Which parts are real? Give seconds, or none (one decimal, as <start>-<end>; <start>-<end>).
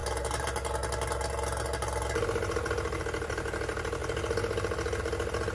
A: 0.0-5.5